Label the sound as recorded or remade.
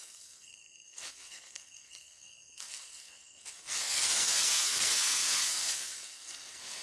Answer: remade